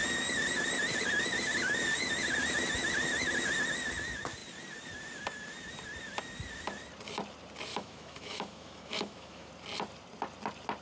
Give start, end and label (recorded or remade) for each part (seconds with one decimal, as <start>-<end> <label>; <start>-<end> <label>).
0.0-7.7 recorded; 7.7-9.5 remade; 9.5-10.8 recorded